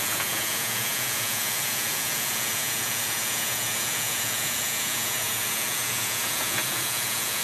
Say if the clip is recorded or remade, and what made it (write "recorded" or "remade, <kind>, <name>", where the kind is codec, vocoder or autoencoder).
remade, vocoder, Vocos